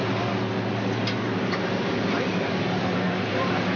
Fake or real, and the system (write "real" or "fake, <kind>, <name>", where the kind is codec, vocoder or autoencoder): real